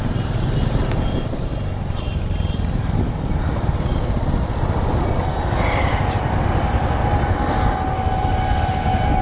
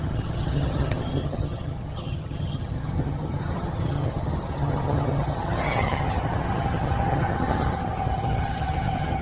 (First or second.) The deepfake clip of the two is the second